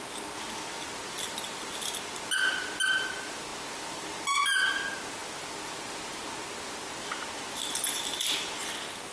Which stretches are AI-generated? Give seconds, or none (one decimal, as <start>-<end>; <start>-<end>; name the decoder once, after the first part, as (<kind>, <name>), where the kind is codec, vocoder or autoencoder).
none